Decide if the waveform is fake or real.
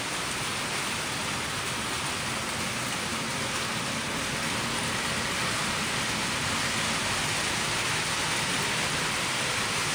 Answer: real